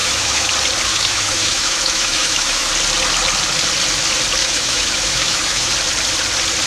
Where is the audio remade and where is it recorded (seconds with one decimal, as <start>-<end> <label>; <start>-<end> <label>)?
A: 0.0-0.5 remade; 0.5-0.9 recorded; 0.9-2.7 remade; 2.7-4.4 recorded; 4.4-5.7 remade; 5.7-6.7 recorded